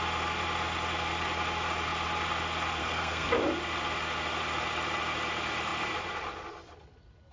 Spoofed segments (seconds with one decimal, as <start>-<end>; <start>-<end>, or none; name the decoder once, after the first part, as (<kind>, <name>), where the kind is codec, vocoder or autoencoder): 2.8-3.3 (codec, SNAC)